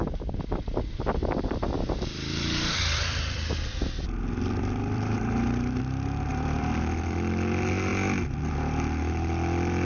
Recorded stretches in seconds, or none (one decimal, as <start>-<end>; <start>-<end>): 0.0-1.2; 5.8-6.3; 6.8-9.8